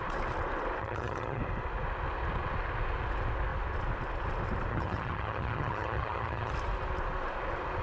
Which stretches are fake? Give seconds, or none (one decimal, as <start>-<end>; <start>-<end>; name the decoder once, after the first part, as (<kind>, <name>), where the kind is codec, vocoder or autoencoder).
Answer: 0.8-1.4 (vocoder, HiFi-GAN); 4.7-6.5